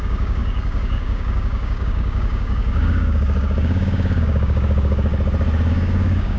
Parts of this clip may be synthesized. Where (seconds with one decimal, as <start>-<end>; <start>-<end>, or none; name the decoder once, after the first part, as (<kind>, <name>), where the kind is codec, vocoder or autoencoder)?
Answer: 0.0-5.1 (codec, DAC); 5.7-6.4

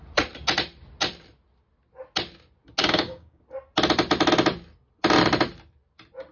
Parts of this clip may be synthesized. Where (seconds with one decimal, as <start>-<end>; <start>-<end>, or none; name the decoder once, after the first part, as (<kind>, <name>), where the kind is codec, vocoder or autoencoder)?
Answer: 2.8-3.4 (codec, DAC)

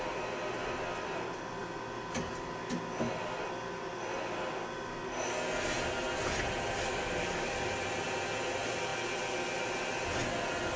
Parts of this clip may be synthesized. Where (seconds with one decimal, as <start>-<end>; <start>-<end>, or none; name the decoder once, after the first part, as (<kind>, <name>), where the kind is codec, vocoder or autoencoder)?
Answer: 6.9-7.7 (codec, DAC)

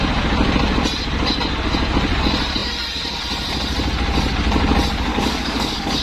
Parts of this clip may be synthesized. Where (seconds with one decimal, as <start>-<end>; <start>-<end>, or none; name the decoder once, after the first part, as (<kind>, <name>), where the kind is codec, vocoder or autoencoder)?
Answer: 5.1-6.0 (codec, DAC)

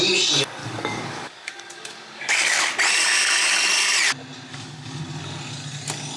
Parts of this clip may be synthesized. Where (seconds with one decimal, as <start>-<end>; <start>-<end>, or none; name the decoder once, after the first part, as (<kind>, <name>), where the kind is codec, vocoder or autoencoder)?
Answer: 0.6-2.7 (codec, DAC); 4.5-5.0

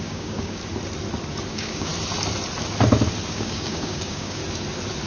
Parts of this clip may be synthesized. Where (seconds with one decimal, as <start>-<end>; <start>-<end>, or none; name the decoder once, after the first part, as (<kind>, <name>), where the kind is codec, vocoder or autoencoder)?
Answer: 0.0-0.6 (codec, DAC); 1.5-1.9; 3.3-4.4

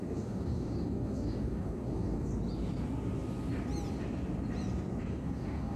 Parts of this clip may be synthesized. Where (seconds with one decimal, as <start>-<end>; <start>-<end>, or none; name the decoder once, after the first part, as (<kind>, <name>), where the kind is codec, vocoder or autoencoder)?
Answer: 0.0-2.3 (codec, DAC); 5.0-5.8

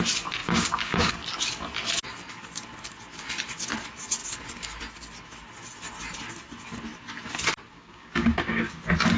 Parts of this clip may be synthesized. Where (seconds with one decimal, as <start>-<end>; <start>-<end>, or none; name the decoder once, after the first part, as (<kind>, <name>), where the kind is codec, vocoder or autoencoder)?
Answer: 0.4-1.1 (codec, DAC); 7.7-8.7